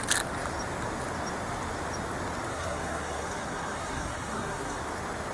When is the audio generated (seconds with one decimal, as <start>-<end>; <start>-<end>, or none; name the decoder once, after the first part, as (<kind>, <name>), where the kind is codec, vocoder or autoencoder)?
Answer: 2.5-4.8 (codec, SNAC)